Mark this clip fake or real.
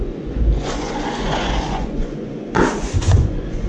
fake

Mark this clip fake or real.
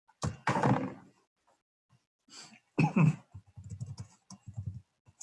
real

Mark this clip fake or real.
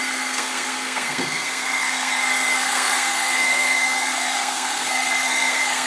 fake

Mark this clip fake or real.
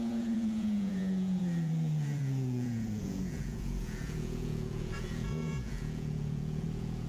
fake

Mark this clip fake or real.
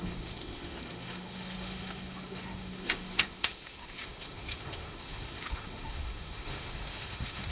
fake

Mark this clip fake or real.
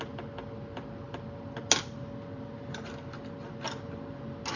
real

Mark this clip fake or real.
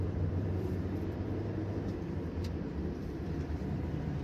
fake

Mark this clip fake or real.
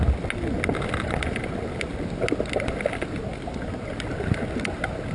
real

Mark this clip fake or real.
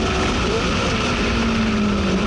real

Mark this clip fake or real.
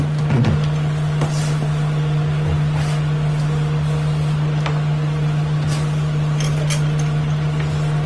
real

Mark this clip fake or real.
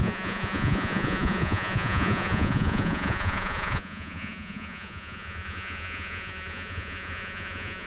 fake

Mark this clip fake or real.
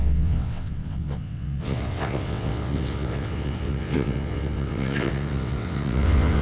fake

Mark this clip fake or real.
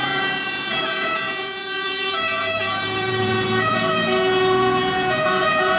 fake